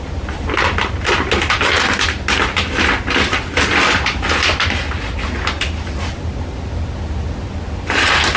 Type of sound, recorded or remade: recorded